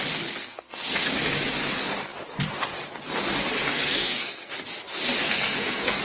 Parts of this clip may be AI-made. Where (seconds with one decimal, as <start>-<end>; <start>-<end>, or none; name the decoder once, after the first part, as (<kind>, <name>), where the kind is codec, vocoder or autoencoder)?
0.4-1.3 (codec, SNAC); 3.7-4.5; 5.2-6.0